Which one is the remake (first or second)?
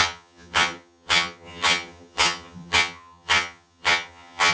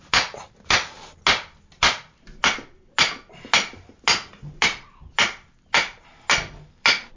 first